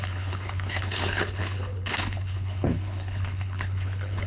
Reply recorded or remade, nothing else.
remade